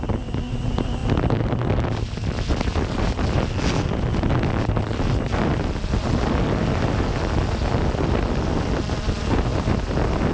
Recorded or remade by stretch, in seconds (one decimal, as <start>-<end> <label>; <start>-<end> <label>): 0.0-10.3 recorded